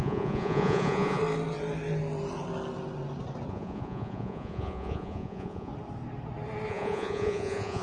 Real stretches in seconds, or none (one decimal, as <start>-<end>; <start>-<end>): 1.2-3.5; 5.7-6.7